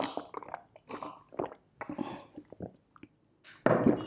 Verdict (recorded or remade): recorded